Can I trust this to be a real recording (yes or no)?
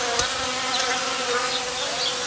yes